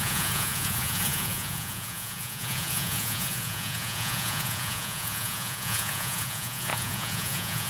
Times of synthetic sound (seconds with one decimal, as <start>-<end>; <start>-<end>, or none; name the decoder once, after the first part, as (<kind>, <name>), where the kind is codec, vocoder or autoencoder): 0.0-7.7 (vocoder, Vocos)